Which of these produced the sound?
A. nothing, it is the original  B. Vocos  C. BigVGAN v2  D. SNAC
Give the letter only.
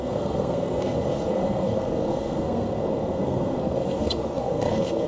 D